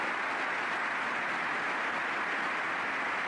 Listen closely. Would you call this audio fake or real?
real